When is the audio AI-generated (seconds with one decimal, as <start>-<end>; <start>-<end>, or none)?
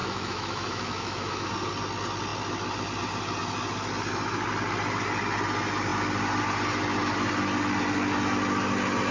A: 0.0-1.5